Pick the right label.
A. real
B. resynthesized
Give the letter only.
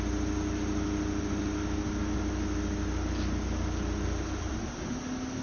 A